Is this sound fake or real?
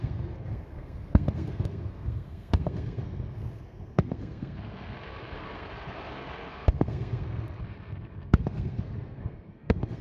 fake